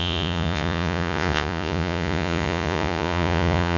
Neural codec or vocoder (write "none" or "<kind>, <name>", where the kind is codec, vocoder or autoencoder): vocoder, Vocos